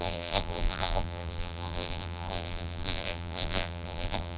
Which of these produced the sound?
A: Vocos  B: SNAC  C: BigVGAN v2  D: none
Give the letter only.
C